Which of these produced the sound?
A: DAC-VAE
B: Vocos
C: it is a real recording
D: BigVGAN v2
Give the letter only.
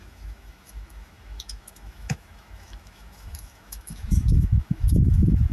A